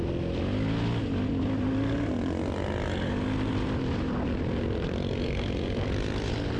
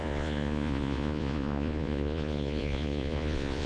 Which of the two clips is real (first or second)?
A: first